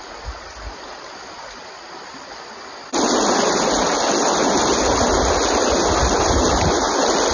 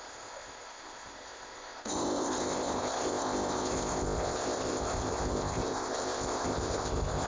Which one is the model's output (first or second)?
second